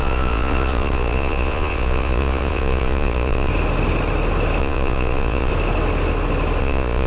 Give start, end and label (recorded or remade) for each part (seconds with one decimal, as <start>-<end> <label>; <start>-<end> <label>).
0.0-3.5 remade; 3.5-4.6 recorded; 4.6-5.5 remade; 5.5-6.6 recorded; 6.6-7.1 remade